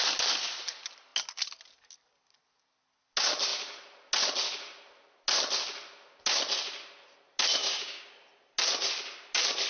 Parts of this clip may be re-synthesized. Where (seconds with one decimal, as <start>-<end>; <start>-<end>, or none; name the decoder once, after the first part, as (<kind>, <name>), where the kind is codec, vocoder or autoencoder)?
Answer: 7.6-8.1 (codec, DAC)